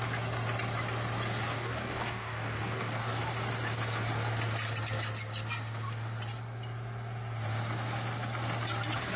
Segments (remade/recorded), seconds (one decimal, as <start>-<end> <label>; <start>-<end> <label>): 0.0-1.5 recorded; 1.5-3.2 remade; 3.2-9.2 recorded